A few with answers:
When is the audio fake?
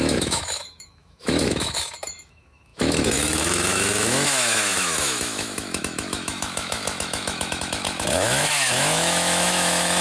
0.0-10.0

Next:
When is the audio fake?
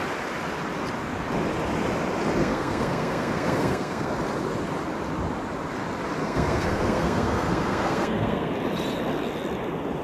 2.4-4.1; 6.2-8.5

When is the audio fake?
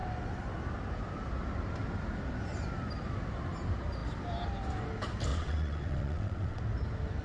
5.3-6.6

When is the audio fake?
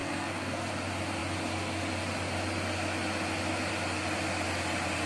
0.0-0.7